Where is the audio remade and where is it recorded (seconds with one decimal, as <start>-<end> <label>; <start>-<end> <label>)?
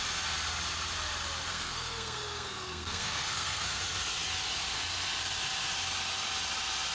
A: 0.0-1.5 recorded; 1.5-3.8 remade; 3.8-6.9 recorded